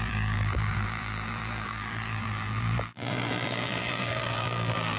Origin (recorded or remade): remade